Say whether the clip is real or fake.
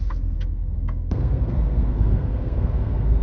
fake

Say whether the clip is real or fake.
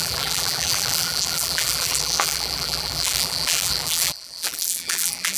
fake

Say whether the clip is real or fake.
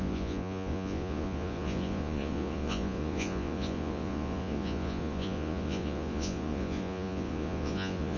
fake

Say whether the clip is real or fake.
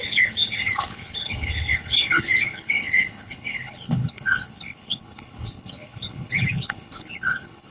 fake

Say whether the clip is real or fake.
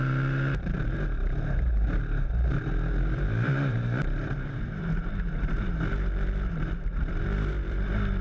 fake